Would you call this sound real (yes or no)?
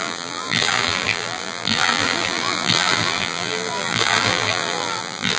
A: no